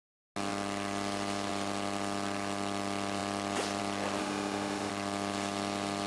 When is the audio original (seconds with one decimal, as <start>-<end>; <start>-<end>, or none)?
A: 0.0-4.2; 4.9-6.1